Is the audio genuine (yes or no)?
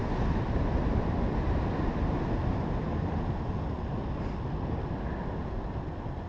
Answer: yes